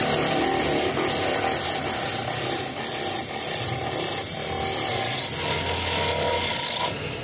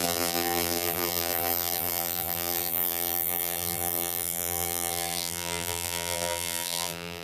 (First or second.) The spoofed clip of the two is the second